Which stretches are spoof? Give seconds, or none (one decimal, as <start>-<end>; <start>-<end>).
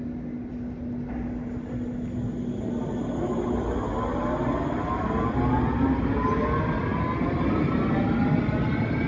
none